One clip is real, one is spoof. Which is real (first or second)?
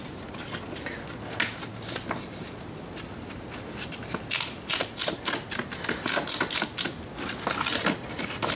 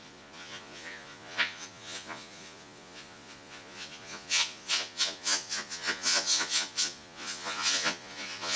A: first